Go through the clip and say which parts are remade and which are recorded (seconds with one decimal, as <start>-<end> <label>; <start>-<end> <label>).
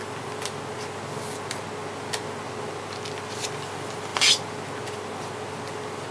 0.0-6.1 recorded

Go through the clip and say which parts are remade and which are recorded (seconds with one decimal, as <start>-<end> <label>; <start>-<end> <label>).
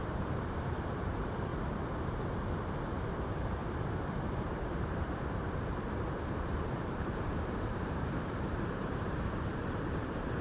0.0-1.5 remade; 1.5-2.3 recorded; 2.3-3.6 remade; 3.6-4.2 recorded; 4.2-10.4 remade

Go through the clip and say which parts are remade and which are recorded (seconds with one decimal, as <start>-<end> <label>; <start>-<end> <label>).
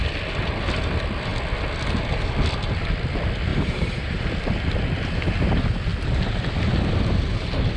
0.0-3.5 recorded; 3.5-4.2 remade; 4.2-7.8 recorded